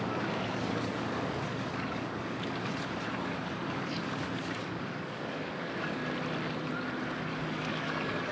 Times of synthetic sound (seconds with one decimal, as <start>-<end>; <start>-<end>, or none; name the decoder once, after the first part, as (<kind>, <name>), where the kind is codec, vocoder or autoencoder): 0.0-6.0 (codec, DAC); 7.3-8.3